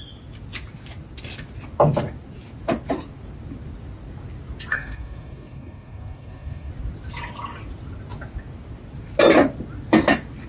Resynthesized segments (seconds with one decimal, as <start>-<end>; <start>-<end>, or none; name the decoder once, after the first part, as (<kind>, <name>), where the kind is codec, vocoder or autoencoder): 4.7-6.7 (codec, SNAC)

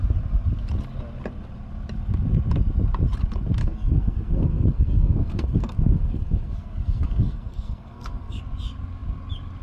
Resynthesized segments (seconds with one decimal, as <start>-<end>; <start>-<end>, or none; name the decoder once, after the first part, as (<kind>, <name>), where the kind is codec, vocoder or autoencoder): 3.6-8.4 (codec, SNAC)

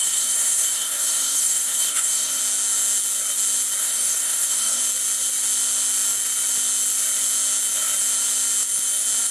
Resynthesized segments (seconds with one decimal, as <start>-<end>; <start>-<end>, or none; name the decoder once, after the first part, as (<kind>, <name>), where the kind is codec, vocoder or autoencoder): 0.0-2.4 (codec, SNAC); 3.8-4.8

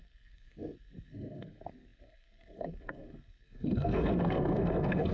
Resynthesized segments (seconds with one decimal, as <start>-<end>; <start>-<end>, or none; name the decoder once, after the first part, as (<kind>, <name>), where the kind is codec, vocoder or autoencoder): 0.0-5.1 (codec, SNAC)